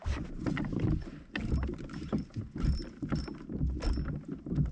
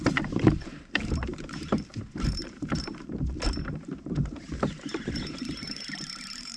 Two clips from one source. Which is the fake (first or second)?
second